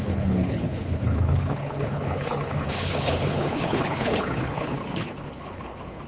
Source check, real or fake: fake